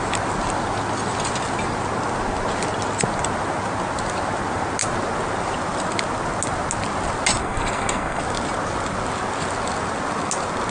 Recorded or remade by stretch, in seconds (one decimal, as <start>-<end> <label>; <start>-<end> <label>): 0.0-7.4 recorded; 7.4-8.2 remade; 8.2-10.7 recorded